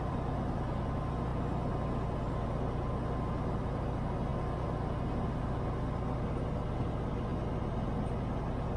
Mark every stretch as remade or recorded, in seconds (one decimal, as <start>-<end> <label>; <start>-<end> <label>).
0.0-8.8 recorded